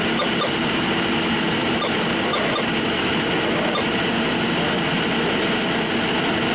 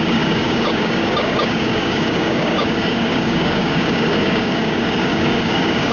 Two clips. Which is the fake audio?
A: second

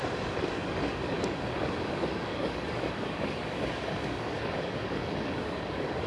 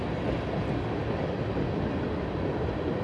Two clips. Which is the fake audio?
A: first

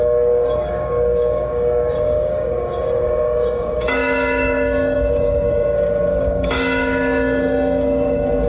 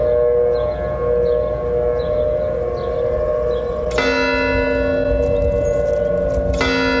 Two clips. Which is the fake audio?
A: first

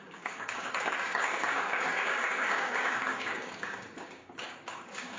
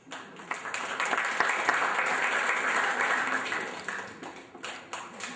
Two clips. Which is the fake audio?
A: first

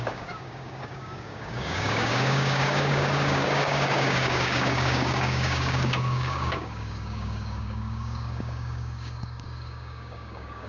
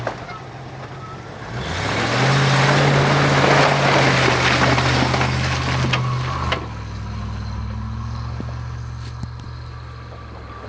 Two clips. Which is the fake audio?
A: first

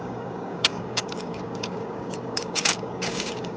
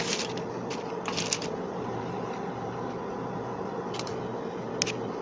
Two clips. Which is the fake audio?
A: first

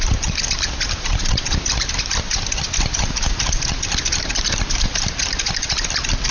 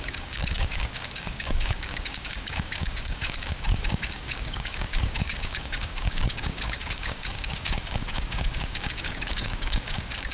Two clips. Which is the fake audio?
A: second